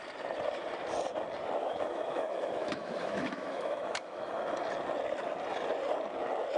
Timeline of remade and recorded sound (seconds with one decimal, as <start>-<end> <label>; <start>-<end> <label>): 0.0-1.6 recorded; 1.6-4.3 remade; 4.3-6.6 recorded